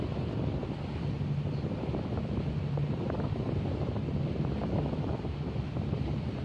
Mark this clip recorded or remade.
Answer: recorded